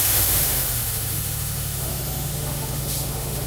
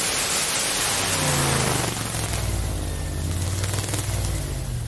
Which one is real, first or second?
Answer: second